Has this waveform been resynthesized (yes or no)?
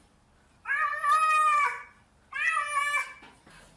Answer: no